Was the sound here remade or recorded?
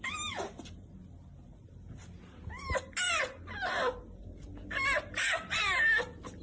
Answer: recorded